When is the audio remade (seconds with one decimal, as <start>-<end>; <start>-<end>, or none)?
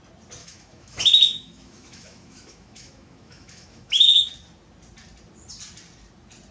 0.4-4.3